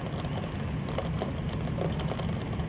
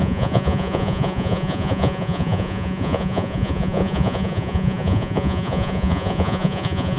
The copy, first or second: second